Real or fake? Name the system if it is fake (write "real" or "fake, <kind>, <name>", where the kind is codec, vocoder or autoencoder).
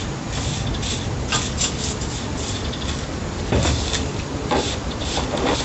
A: real